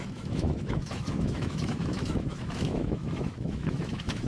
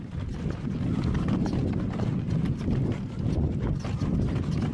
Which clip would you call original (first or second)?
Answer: second